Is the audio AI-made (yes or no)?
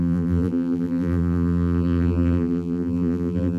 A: yes